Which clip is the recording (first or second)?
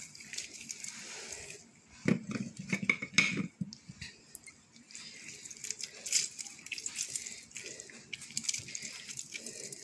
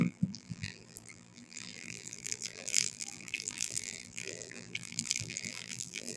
first